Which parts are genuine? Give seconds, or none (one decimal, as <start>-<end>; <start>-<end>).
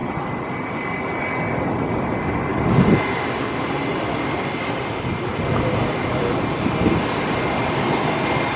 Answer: 1.2-5.3; 6.2-8.6